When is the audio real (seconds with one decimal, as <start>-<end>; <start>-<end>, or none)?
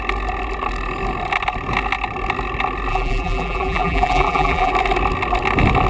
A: 0.0-2.9; 4.7-5.9